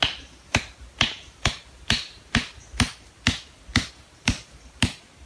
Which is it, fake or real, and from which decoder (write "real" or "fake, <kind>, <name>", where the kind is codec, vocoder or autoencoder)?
real